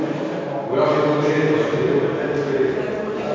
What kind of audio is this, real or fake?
real